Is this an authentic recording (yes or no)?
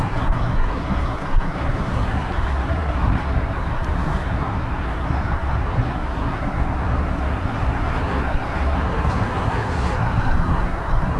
no